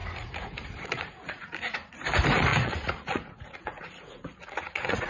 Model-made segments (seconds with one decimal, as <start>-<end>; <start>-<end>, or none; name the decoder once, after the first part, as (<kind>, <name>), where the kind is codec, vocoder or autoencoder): 0.0-1.9 (vocoder, Vocos); 2.5-5.1